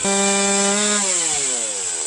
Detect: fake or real real